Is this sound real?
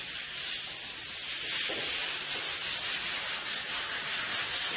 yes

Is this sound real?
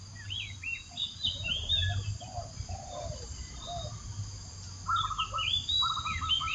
yes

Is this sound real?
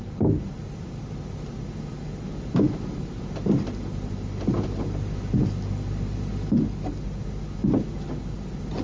yes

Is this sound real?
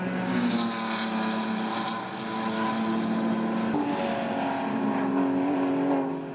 yes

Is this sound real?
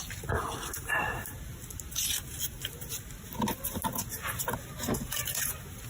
yes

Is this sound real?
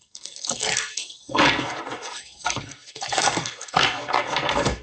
no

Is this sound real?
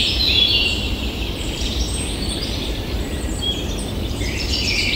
no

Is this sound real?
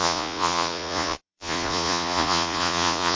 no